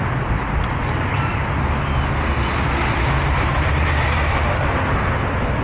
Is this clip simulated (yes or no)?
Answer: no